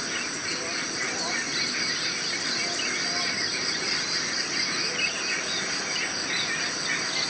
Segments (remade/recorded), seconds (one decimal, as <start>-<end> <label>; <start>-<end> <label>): 0.0-7.3 recorded